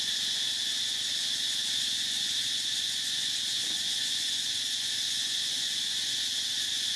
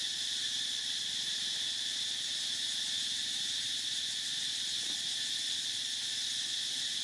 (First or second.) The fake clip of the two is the first